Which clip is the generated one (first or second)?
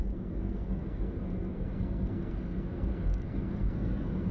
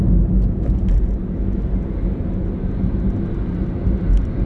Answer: first